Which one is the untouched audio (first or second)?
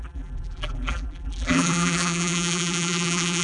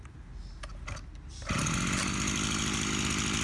second